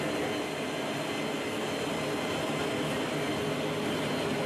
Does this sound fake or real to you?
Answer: real